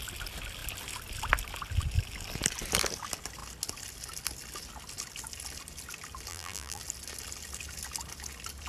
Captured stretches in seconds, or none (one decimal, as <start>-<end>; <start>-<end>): 0.0-6.3; 6.8-8.7